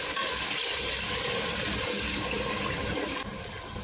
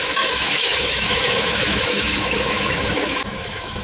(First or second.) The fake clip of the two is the second